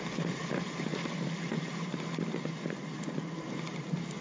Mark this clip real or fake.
real